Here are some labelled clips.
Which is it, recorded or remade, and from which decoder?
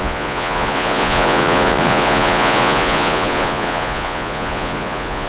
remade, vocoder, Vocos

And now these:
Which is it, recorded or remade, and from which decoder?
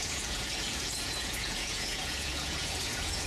remade, vocoder, Vocos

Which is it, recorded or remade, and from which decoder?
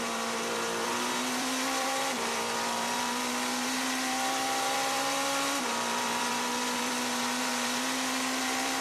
remade, vocoder, BigVGAN v2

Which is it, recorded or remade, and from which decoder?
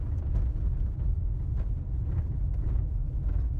remade, vocoder, Vocos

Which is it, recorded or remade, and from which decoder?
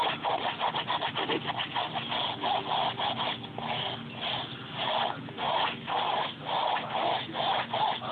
recorded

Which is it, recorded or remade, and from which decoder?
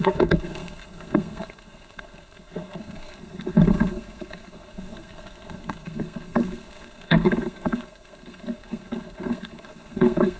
remade, codec, SNAC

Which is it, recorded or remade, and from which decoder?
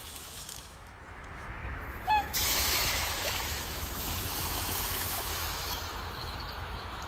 remade, autoencoder, DAC-VAE